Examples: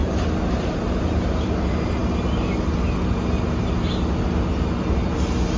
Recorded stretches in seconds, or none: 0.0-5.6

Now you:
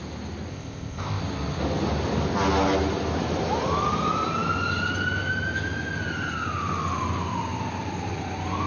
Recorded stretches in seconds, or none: 0.0-0.5; 1.2-8.7

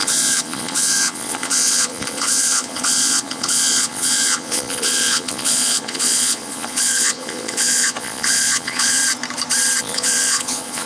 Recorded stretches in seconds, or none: 9.0-9.8